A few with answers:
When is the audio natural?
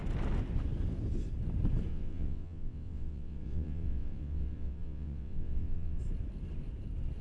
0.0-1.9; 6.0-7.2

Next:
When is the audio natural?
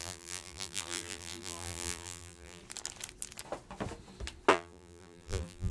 2.6-4.5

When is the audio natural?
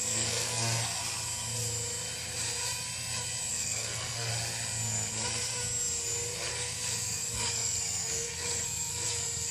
1.0-3.5; 4.3-6.5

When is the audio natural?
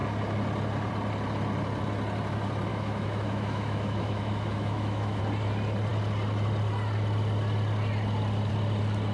0.0-2.7; 5.2-9.1